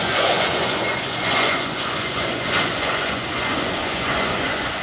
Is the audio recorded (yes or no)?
no